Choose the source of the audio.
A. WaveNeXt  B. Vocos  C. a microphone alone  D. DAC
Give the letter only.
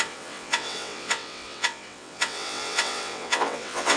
A